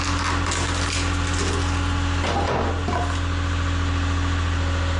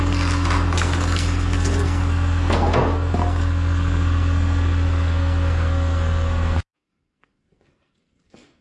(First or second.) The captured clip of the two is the first